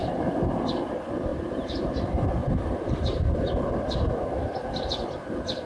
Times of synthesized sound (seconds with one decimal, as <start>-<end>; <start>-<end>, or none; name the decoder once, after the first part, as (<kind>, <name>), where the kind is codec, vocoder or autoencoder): 1.3-2.0 (vocoder, BigVGAN v2); 2.4-3.5